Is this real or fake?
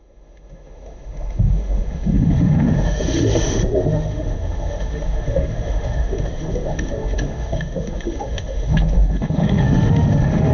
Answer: fake